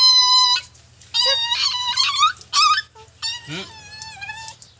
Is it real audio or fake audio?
real